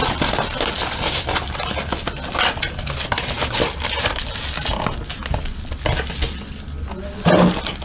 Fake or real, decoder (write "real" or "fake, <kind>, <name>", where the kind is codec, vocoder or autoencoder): real